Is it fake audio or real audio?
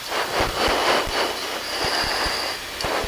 real